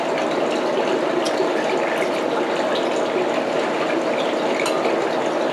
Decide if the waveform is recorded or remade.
recorded